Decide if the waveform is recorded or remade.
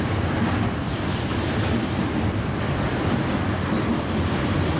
remade